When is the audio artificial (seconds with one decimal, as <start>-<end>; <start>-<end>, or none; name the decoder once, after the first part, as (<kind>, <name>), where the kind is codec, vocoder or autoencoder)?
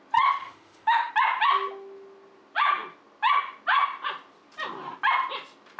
0.4-1.1 (autoencoder, DAC-VAE)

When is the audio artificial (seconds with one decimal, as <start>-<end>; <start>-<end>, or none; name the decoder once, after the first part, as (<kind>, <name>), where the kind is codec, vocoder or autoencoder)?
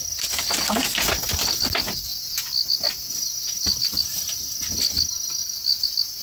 none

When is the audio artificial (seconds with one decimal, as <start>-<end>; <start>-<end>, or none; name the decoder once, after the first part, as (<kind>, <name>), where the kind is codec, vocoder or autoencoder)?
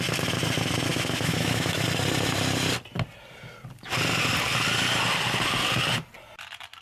0.9-1.8 (autoencoder, DAC-VAE)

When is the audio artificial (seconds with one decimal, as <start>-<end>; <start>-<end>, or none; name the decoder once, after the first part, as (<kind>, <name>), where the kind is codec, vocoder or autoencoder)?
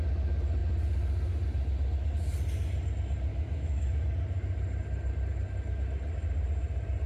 3.3-4.0 (autoencoder, DAC-VAE)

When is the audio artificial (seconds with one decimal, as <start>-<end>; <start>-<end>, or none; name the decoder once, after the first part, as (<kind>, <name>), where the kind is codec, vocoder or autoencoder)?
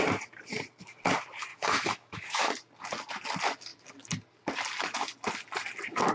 1.5-2.5 (autoencoder, DAC-VAE)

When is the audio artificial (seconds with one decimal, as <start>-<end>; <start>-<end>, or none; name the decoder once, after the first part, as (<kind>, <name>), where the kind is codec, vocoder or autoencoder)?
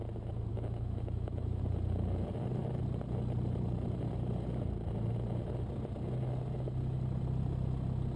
0.5-1.6 (autoencoder, DAC-VAE)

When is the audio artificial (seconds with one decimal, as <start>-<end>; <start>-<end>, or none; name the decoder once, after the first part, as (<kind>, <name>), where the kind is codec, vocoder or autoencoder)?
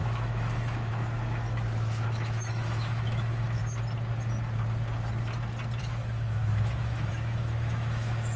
0.0-3.6 (autoencoder, DAC-VAE); 5.8-8.4